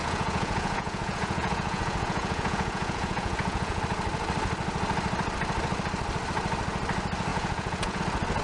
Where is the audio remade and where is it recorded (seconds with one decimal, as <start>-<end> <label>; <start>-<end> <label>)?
0.0-3.8 remade; 3.8-7.3 recorded; 7.3-8.0 remade; 8.0-8.4 recorded